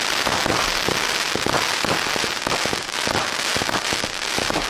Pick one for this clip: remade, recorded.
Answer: recorded